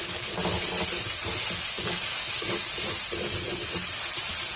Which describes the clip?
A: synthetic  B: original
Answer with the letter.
B